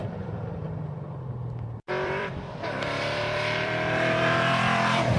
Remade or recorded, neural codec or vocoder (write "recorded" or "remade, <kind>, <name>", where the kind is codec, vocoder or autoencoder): remade, vocoder, BigVGAN v2